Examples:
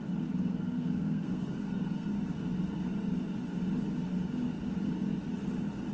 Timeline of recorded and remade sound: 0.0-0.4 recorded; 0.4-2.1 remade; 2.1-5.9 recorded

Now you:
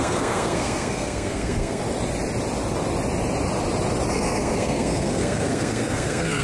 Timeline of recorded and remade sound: 0.0-1.8 remade; 1.8-4.1 recorded; 4.1-6.4 remade

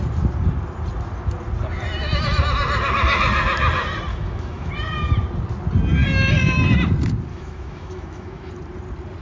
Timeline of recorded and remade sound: 0.0-4.1 recorded; 4.1-4.7 remade; 4.7-7.3 recorded; 7.3-8.5 remade; 8.5-9.2 recorded

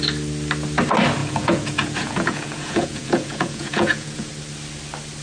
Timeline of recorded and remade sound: 0.0-1.2 recorded; 1.2-4.3 remade; 4.3-5.2 recorded

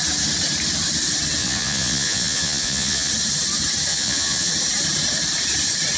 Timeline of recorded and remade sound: 0.0-1.4 recorded; 1.4-3.1 remade; 3.1-3.9 recorded; 3.9-4.5 remade; 4.5-6.0 recorded